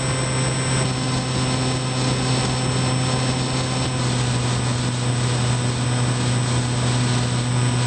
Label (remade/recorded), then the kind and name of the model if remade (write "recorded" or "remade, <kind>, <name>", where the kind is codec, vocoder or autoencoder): recorded